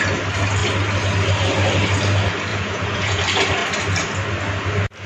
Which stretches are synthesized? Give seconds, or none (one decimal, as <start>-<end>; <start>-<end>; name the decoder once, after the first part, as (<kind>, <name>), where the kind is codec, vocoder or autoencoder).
2.5-3.2 (vocoder, Vocos)